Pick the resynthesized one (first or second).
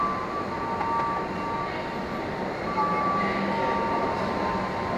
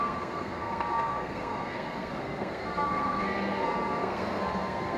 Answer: second